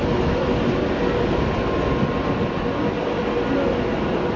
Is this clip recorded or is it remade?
recorded